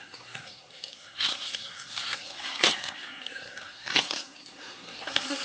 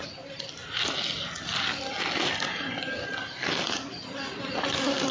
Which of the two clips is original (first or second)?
second